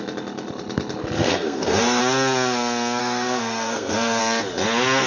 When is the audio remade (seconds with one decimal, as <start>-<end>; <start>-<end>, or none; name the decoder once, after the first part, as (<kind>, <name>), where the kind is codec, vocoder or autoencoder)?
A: 1.2-2.0 (codec, SNAC); 3.0-4.2